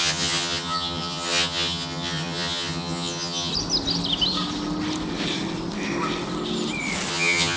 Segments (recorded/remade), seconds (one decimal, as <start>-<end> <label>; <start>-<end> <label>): 0.0-3.5 remade; 3.5-7.1 recorded; 7.1-7.6 remade